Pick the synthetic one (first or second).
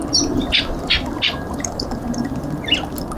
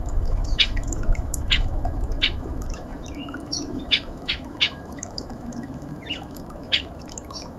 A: second